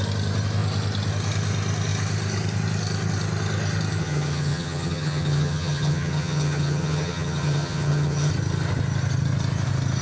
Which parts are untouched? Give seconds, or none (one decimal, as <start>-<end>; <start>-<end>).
0.0-4.0; 8.3-10.0